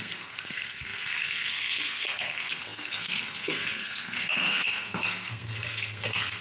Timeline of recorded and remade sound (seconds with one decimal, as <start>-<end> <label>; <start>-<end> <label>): 0.0-6.4 remade